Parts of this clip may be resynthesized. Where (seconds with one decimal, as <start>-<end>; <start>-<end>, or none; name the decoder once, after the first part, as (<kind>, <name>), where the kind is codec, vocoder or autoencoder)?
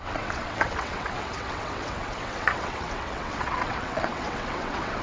0.0-5.0 (vocoder, WaveNeXt)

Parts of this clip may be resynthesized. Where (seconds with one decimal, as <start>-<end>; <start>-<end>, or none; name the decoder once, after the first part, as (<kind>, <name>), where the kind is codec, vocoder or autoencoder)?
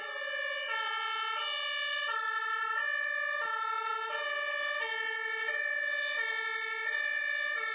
1.9-2.8 (vocoder, BigVGAN v2)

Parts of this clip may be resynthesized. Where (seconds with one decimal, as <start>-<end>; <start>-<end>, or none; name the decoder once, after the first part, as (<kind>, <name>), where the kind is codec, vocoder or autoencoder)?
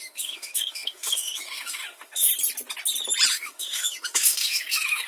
0.0-2.3 (autoencoder, DAC-VAE); 3.3-5.1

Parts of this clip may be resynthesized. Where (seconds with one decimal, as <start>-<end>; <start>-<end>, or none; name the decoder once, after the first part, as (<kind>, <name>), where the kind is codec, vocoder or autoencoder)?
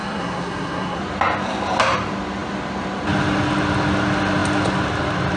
0.0-1.0 (codec, SNAC)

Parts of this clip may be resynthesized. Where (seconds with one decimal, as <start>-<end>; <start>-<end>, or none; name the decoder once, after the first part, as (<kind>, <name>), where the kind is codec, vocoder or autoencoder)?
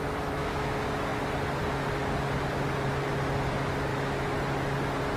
0.0-0.7 (autoencoder, DAC-VAE); 3.9-4.4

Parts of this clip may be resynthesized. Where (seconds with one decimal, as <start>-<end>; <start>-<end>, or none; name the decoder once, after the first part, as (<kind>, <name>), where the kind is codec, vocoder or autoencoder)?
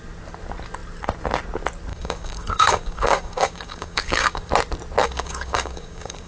1.9-4.5 (codec, DAC); 5.0-6.3